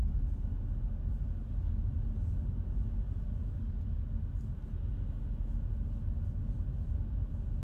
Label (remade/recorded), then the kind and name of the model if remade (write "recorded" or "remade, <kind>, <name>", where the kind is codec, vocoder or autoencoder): recorded